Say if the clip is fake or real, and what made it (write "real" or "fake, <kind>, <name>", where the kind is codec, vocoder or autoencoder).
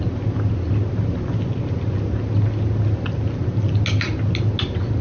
real